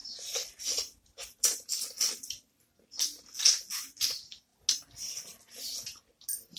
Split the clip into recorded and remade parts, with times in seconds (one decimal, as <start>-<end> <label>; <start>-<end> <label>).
0.0-2.7 remade; 2.7-6.6 recorded